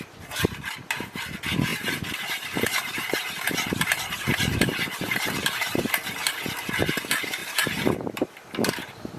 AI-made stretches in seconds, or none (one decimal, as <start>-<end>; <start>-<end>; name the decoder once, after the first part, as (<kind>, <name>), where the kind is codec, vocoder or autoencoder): 1.7-5.9 (vocoder, BigVGAN v2); 7.4-9.2